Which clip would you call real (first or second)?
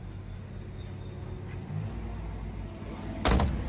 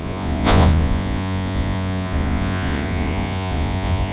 first